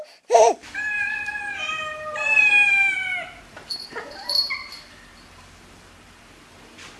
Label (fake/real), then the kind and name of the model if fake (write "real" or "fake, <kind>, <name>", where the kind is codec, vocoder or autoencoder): fake, vocoder, BigVGAN v2